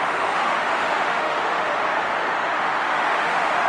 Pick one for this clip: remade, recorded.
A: remade